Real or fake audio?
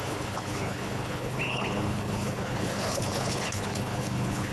fake